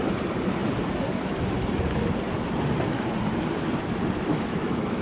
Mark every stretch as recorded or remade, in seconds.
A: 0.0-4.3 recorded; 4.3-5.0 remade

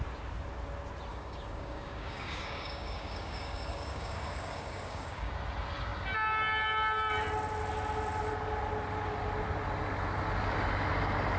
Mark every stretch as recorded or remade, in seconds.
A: 0.0-1.1 recorded; 1.1-5.3 remade; 5.3-11.4 recorded

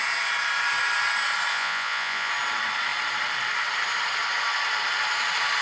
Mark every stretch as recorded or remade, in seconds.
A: 0.0-1.5 recorded; 1.5-2.3 remade; 2.3-5.6 recorded

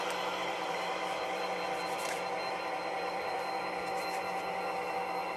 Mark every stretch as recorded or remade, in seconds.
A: 0.0-0.4 recorded; 0.4-3.6 remade; 3.6-5.4 recorded